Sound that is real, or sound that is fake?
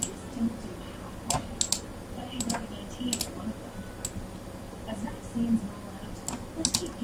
real